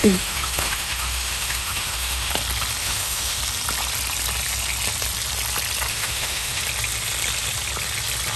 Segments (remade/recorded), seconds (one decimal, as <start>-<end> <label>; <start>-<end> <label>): 0.0-2.3 remade; 2.3-2.8 recorded; 2.8-3.4 remade; 3.4-5.9 recorded; 5.9-6.6 remade; 6.6-8.4 recorded